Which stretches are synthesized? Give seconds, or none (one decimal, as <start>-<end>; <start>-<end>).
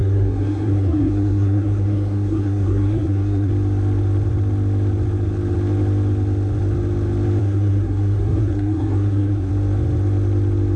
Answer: 0.0-3.5; 7.4-9.5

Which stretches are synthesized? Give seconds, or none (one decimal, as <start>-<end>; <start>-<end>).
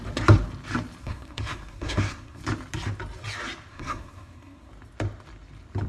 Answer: 1.0-2.4; 3.7-4.7